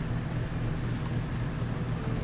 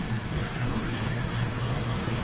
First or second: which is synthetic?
second